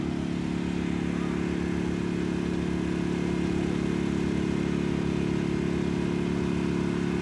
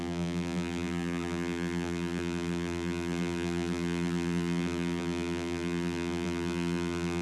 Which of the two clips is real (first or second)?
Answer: first